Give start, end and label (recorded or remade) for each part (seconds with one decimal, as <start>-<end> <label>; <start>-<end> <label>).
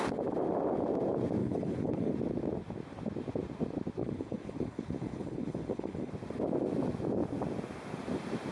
0.0-1.4 recorded; 1.4-2.1 remade; 2.1-4.0 recorded; 4.0-6.1 remade; 6.1-8.5 recorded